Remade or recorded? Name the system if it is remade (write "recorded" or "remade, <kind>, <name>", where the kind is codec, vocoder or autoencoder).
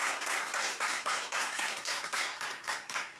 remade, codec, SNAC